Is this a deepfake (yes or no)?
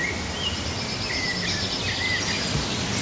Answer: yes